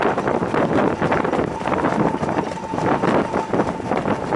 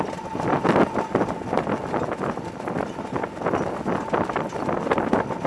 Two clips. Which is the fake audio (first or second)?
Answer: first